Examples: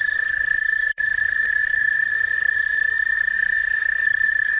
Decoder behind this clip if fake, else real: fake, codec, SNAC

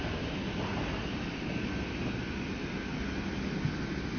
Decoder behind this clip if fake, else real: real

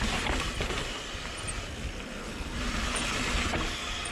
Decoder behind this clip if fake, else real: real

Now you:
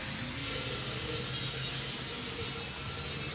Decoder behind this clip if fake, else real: real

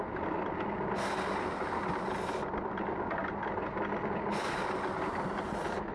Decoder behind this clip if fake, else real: real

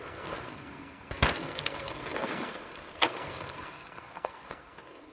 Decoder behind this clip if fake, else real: fake, codec, SNAC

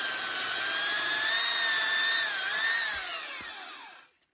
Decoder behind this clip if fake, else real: real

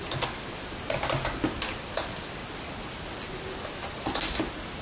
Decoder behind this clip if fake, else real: real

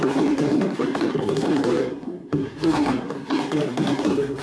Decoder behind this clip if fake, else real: fake, codec, SNAC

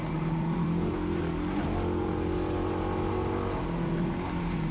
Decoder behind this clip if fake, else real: real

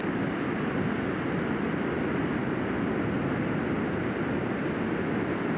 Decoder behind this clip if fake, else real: real